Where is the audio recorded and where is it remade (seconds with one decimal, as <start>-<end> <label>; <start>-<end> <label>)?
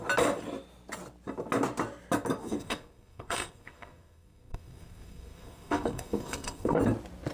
0.0-2.4 recorded; 2.4-6.8 remade; 6.8-7.3 recorded